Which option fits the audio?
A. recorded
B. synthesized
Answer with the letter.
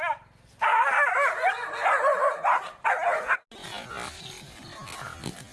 A